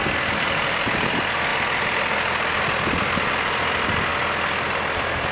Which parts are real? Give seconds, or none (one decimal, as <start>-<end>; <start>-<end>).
0.0-5.3